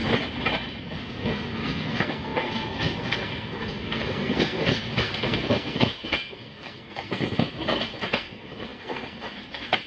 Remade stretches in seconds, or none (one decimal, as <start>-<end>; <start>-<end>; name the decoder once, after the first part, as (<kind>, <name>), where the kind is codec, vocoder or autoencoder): 0.8-9.9 (codec, SNAC)